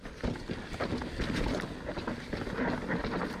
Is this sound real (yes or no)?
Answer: yes